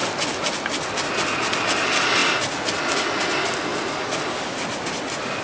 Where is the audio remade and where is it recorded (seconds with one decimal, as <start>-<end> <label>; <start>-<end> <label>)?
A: 0.0-5.4 recorded